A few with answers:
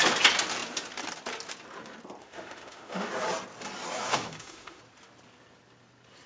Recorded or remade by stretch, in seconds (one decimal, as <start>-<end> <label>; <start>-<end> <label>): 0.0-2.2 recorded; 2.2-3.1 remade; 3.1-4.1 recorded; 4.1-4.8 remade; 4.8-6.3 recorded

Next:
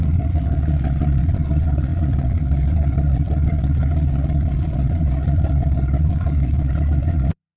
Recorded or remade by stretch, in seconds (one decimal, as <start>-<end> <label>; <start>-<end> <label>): 0.0-7.6 remade

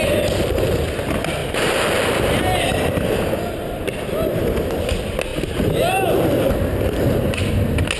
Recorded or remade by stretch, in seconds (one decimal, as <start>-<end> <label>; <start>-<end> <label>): 0.0-1.4 recorded; 1.4-2.4 remade; 2.4-5.3 recorded; 5.3-7.5 remade; 7.5-8.0 recorded

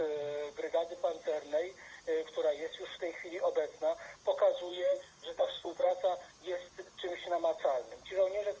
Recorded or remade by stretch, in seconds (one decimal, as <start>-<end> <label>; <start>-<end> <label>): 0.0-4.7 recorded; 4.7-5.9 remade; 5.9-8.6 recorded

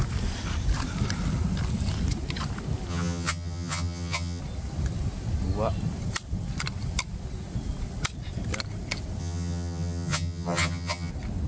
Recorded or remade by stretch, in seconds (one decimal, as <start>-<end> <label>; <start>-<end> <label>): 0.0-2.9 recorded; 2.9-4.4 remade; 4.4-9.2 recorded; 9.2-11.1 remade; 11.1-11.5 recorded

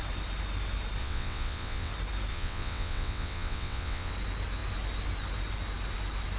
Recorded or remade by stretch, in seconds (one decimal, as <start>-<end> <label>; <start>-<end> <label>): 0.0-1.0 recorded; 1.0-1.9 remade; 1.9-2.3 recorded; 2.3-4.1 remade; 4.1-6.4 recorded